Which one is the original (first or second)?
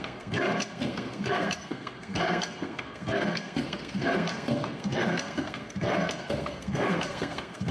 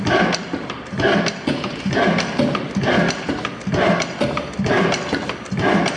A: second